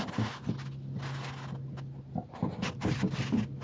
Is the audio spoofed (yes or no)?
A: no